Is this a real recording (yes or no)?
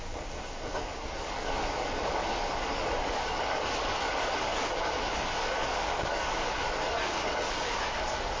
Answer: no